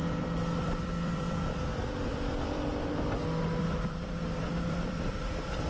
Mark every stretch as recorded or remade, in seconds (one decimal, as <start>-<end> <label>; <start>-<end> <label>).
0.0-2.7 remade; 2.7-3.6 recorded; 3.6-5.7 remade